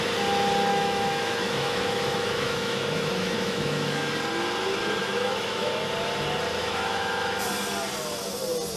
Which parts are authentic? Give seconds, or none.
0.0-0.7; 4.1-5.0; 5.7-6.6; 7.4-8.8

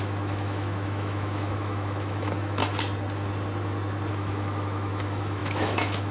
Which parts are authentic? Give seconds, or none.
2.6-4.1

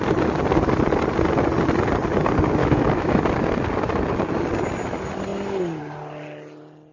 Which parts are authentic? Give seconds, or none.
0.0-2.6; 3.2-6.9

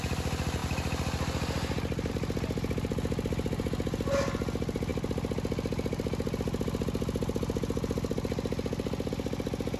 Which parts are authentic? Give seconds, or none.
0.0-9.8